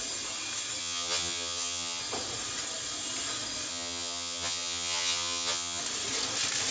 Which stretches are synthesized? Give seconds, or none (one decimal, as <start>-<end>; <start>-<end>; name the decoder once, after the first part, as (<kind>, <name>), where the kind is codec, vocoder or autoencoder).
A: 0.8-2.0 (vocoder, HiFi-GAN); 3.7-5.8